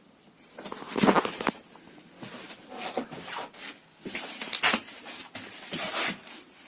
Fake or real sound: real